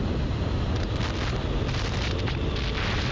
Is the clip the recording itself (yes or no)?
yes